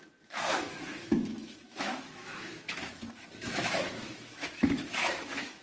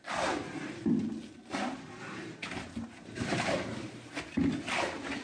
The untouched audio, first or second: second